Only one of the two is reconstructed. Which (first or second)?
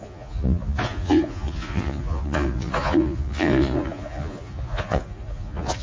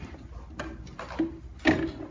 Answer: first